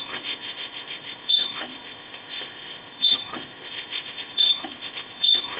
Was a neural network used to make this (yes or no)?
yes